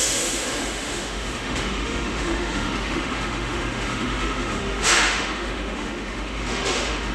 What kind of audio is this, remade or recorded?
remade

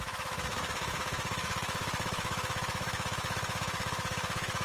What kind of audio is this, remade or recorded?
remade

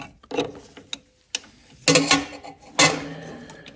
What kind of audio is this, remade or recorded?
recorded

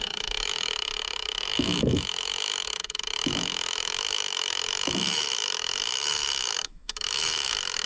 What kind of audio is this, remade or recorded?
remade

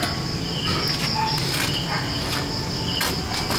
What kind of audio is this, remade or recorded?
recorded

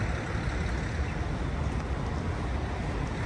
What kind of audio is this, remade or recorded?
recorded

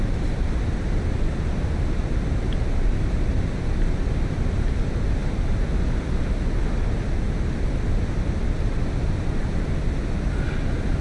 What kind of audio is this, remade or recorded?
recorded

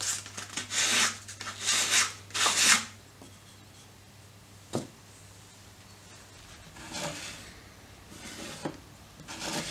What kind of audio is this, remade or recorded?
recorded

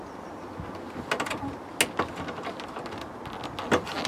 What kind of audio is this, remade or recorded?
recorded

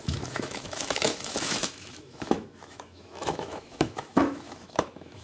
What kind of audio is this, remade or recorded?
remade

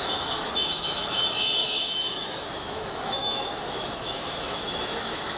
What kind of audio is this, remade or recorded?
remade